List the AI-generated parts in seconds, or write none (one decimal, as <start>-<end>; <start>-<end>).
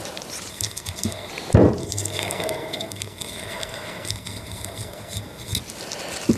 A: 0.5-1.3; 1.8-5.6